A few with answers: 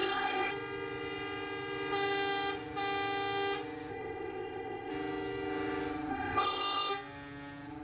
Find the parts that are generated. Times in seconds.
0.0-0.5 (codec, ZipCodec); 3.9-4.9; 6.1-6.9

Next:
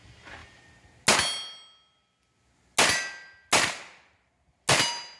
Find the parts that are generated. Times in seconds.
none

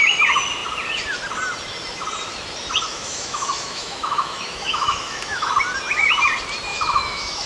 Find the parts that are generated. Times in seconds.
2.9-5.5 (autoencoder, DAC-VAE); 6.7-7.5

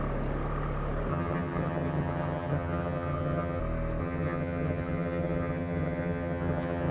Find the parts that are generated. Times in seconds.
1.1-3.6 (vocoder, HiFi-GAN); 4.0-6.9

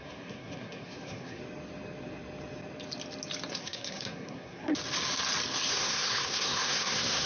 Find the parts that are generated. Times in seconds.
0.0-1.4 (codec, SNAC); 3.5-4.7; 5.7-7.3

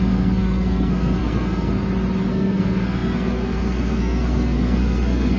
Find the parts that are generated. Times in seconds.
0.0-1.8 (codec, SNAC); 2.3-5.4

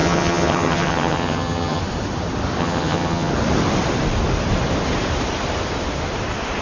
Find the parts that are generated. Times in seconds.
0.0-1.8 (vocoder, HiFi-GAN); 2.6-3.3

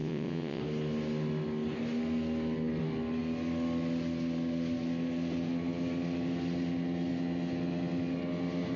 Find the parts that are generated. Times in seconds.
0.0-0.6 (vocoder, WaveNeXt)